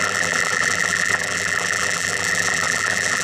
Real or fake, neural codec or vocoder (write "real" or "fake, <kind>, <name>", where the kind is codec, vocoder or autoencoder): fake, vocoder, BigVGAN v2